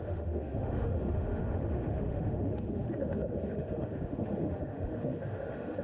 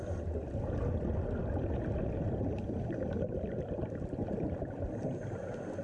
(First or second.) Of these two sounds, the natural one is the second